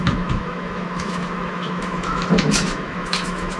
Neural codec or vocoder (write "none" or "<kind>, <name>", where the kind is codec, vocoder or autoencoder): autoencoder, DAC-VAE